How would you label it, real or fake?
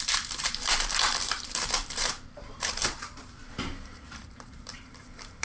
fake